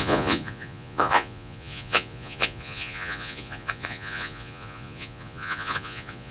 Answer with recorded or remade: remade